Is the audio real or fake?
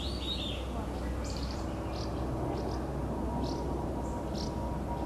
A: real